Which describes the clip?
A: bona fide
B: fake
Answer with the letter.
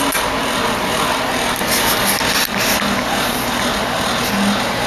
A